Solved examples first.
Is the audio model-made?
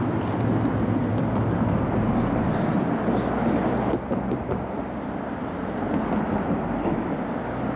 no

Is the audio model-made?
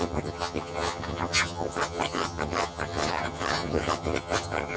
yes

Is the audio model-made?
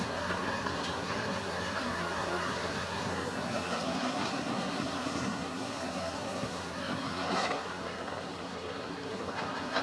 yes